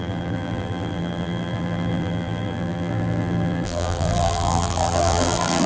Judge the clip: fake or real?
fake